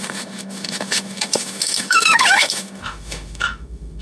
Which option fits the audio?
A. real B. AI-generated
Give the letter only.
B